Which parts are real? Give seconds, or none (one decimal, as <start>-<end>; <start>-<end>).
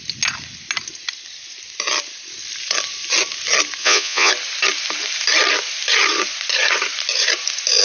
0.0-3.8; 4.3-7.8